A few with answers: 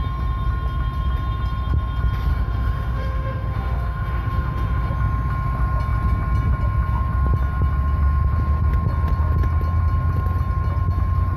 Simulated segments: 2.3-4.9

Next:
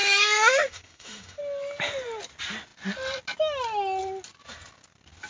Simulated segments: 0.0-1.4

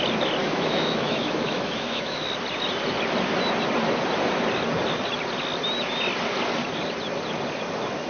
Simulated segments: 0.4-2.2

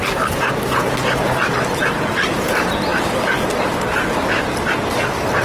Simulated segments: none

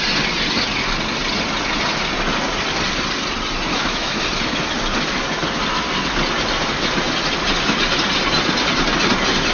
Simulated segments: 3.7-4.2

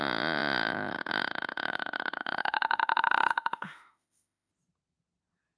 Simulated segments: 2.2-4.5

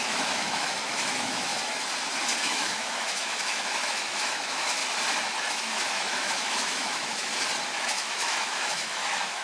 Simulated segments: 0.0-1.5; 2.4-4.8; 5.5-7.3; 7.8-9.4